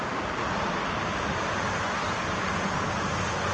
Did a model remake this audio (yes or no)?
no